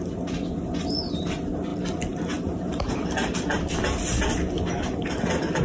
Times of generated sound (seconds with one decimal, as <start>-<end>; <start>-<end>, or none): none